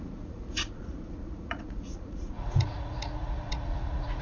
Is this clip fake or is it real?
fake